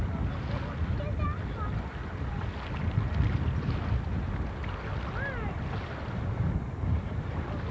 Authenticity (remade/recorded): recorded